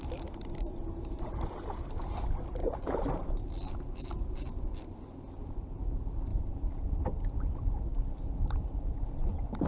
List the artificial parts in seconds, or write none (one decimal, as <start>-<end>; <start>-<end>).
none